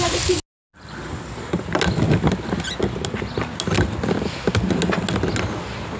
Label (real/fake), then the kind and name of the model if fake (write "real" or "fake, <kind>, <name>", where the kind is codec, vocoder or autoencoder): real